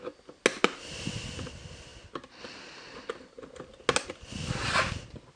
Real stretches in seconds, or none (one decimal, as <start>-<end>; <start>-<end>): 0.0-5.4